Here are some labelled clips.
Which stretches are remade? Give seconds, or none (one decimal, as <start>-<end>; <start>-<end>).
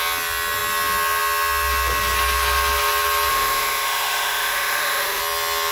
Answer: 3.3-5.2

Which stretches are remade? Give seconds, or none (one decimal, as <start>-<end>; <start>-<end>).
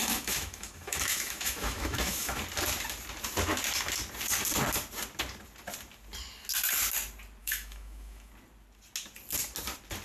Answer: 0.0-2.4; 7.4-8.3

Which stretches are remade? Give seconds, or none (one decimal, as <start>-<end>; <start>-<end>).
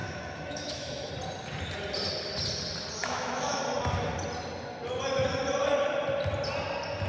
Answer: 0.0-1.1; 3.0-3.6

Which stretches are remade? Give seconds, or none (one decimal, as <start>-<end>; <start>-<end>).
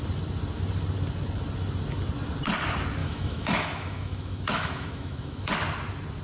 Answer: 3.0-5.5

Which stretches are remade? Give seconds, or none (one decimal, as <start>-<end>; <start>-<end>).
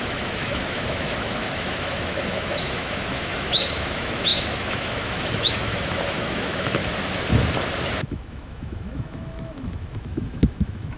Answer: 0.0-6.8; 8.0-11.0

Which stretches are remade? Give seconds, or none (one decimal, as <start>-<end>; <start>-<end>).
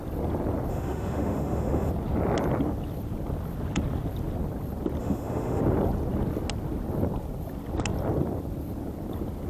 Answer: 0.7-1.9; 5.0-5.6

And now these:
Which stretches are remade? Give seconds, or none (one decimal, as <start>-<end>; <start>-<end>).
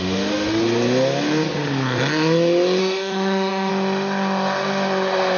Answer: 0.0-0.6; 2.8-3.7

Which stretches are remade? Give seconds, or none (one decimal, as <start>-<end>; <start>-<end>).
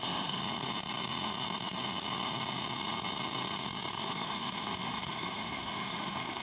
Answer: 0.0-0.4; 3.9-6.4